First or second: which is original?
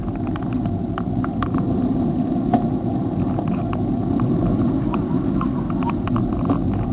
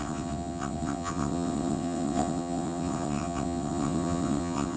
first